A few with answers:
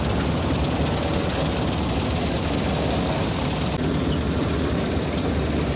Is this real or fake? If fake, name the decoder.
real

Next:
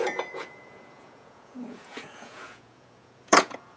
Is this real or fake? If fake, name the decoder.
fake, vocoder, Vocos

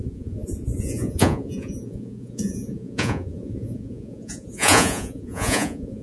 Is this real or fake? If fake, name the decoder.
fake, vocoder, Vocos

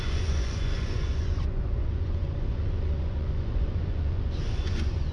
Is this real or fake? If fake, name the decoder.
fake, vocoder, Vocos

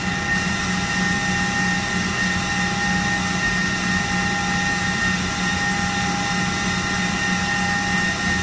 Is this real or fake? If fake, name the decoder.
real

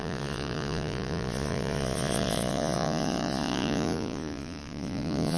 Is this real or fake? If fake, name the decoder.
fake, vocoder, Vocos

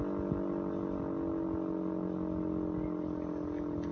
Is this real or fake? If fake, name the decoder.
real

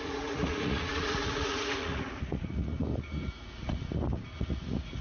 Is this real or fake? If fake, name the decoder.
fake, vocoder, Vocos